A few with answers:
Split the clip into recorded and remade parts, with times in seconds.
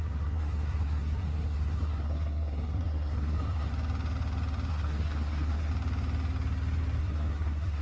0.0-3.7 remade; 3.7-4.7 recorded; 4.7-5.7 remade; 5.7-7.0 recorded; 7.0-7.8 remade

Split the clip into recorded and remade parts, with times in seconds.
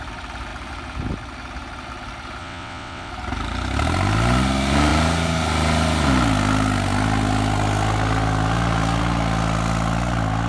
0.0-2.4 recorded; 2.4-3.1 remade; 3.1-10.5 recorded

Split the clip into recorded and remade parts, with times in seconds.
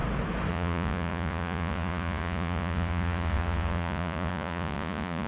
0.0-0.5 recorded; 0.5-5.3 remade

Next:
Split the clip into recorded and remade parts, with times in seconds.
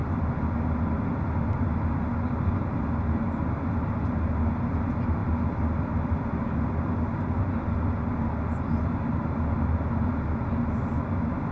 0.0-11.5 recorded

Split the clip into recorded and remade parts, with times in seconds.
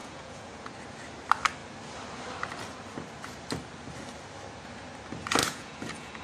0.0-0.7 remade; 0.7-5.4 recorded; 5.4-6.2 remade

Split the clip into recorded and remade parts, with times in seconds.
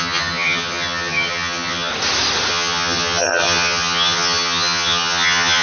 0.0-1.9 remade; 1.9-2.5 recorded; 2.5-5.6 remade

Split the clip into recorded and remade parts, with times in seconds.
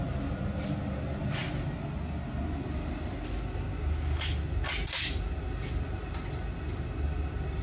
0.0-7.6 recorded